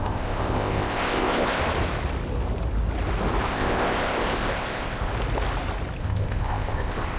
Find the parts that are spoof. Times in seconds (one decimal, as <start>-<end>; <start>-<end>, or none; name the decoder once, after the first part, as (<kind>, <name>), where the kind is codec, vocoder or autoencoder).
0.0-1.6 (codec, ZipCodec); 3.4-5.1; 6.0-7.2

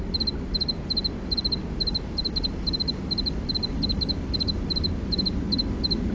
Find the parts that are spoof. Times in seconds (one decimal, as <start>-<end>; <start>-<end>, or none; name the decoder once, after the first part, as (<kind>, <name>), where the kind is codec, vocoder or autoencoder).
none

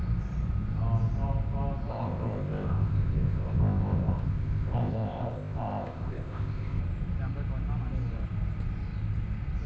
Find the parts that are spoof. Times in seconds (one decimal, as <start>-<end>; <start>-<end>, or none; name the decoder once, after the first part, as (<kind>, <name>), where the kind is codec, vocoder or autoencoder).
1.9-6.8 (codec, ZipCodec)

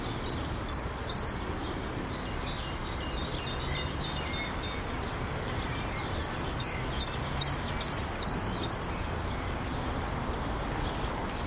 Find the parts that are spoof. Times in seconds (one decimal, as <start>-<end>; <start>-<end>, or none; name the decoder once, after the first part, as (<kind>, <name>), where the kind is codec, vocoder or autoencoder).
none

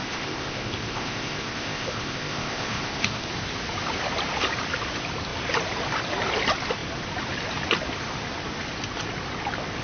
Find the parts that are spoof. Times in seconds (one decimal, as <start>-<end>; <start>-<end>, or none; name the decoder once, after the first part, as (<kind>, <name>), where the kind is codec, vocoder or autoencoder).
0.0-3.3 (codec, ZipCodec)